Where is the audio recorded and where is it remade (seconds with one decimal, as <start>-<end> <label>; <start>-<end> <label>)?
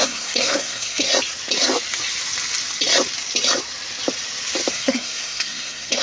0.0-1.1 remade; 1.1-4.7 recorded; 4.7-6.0 remade